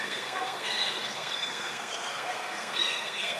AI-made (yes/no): yes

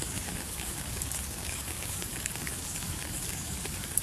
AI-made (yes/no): yes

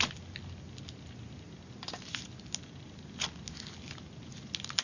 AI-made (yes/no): no